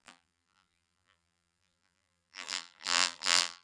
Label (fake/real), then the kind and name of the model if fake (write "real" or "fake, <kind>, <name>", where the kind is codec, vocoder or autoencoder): fake, vocoder, BigVGAN v2